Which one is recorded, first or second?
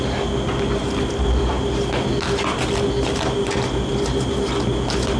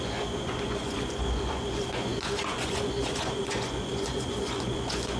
first